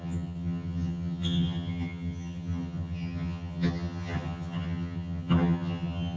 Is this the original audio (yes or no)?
no